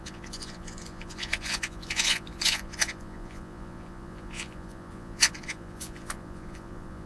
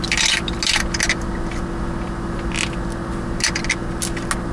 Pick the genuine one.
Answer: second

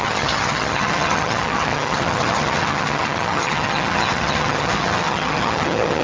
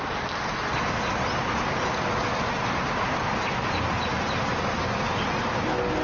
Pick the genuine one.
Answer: second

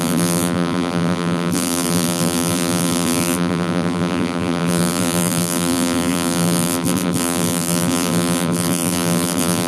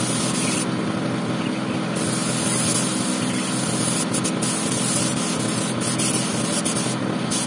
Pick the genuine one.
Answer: second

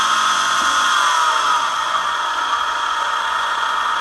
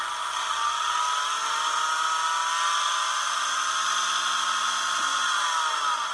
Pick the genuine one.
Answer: second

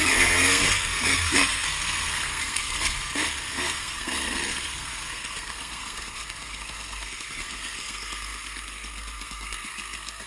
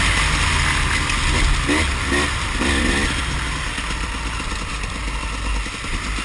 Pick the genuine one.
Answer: second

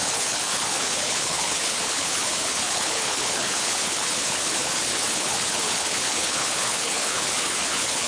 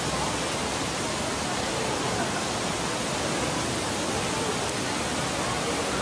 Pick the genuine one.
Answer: second